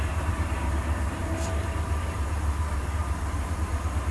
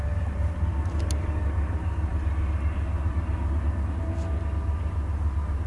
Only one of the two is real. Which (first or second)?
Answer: second